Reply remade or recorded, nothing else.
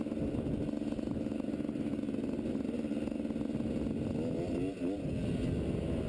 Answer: recorded